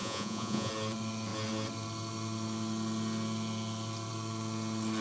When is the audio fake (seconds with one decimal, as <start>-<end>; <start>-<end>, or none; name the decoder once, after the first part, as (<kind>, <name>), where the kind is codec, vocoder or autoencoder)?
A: 0.0-0.7 (vocoder, Vocos)